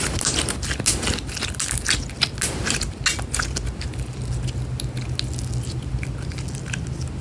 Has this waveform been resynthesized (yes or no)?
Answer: no